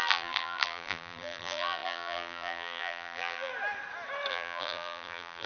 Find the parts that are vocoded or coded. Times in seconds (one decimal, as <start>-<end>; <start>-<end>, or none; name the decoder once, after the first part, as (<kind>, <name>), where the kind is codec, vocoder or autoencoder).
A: 0.0-3.5 (vocoder, BigVGAN v2); 4.3-5.5